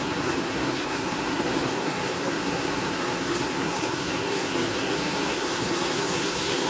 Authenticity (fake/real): fake